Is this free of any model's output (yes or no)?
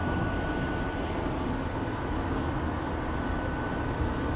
yes